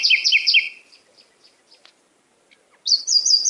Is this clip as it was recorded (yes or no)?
yes